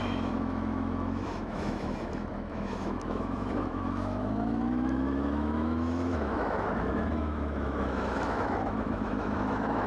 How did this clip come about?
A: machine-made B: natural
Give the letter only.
A